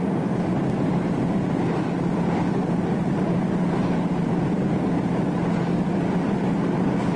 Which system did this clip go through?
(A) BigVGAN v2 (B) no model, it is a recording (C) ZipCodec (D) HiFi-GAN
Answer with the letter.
B